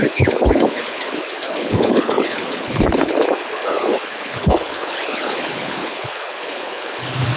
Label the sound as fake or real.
fake